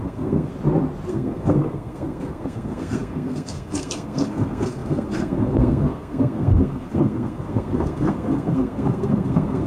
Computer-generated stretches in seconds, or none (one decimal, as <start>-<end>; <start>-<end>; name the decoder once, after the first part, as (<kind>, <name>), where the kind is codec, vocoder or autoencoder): 0.0-0.5 (codec, SNAC); 1.1-9.7